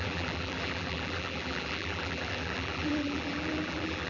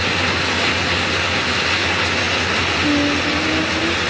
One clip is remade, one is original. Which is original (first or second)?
second